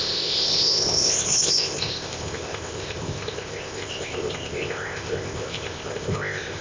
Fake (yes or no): yes